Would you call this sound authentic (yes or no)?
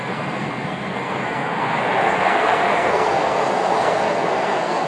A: no